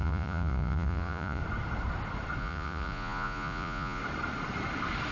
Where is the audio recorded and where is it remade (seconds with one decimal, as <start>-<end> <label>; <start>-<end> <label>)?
0.0-1.4 remade; 1.4-2.4 recorded; 2.4-4.0 remade; 4.0-5.1 recorded